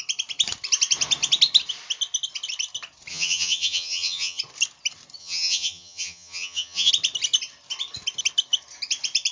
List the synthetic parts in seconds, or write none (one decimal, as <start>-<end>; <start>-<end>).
3.1-4.4; 5.2-6.9